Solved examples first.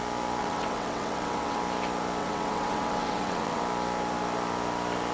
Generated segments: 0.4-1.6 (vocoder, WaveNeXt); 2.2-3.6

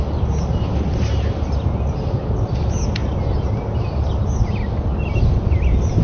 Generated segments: none